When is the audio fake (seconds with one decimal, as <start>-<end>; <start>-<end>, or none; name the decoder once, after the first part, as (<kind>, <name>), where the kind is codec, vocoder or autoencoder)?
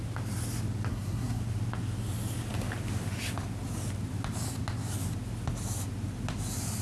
0.9-1.4 (codec, SNAC)